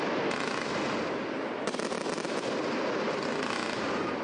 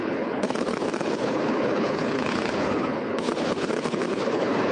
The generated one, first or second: second